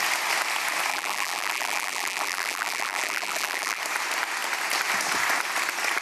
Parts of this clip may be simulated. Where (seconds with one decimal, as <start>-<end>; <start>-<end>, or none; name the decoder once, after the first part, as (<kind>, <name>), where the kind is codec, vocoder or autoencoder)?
0.9-3.8 (vocoder, BigVGAN v2)